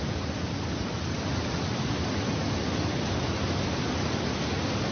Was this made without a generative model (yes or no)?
yes